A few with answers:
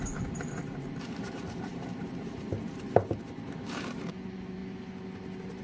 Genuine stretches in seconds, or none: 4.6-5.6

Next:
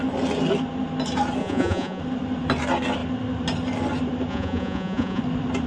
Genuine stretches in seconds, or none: 0.0-1.4; 2.0-4.3; 5.2-5.7

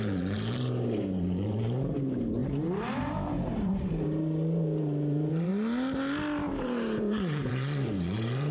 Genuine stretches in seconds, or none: 5.5-6.5

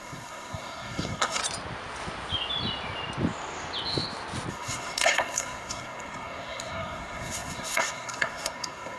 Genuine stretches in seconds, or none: 1.4-4.5

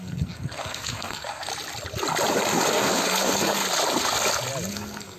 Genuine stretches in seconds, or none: 1.5-2.7; 3.6-4.7

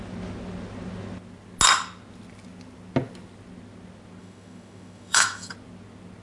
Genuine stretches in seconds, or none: 0.0-4.2; 5.5-6.2

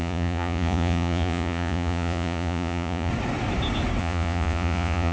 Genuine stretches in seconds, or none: 3.1-4.0